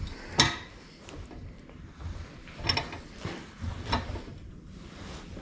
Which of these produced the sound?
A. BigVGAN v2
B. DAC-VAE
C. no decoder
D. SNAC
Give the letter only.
C